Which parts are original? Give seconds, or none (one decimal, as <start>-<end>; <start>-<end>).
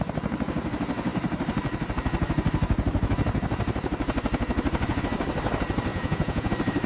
0.0-5.9; 6.5-6.9